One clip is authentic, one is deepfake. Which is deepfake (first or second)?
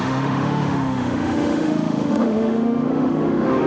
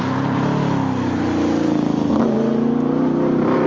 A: first